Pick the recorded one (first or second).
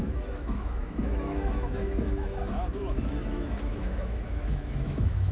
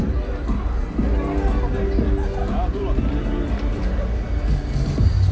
second